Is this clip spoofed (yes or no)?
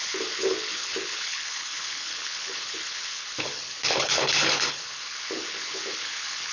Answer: yes